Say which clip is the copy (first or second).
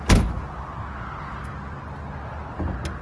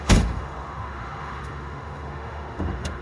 second